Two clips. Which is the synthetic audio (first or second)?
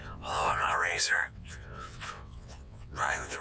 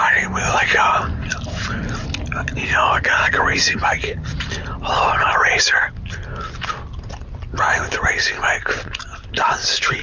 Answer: first